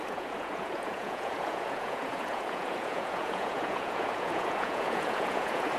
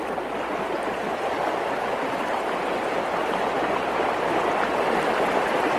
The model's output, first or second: first